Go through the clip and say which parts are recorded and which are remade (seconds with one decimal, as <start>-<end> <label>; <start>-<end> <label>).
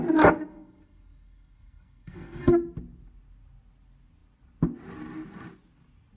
0.0-0.5 recorded; 0.5-2.5 remade; 2.5-6.2 recorded